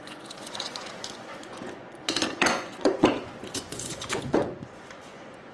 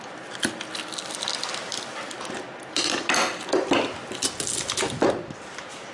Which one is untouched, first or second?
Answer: second